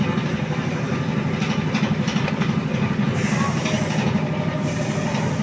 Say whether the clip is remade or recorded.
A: recorded